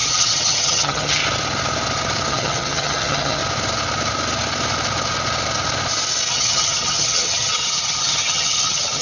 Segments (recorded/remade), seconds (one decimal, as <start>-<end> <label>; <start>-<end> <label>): 0.0-1.2 remade; 1.2-2.3 recorded; 2.3-3.4 remade; 3.4-6.3 recorded; 6.3-9.0 remade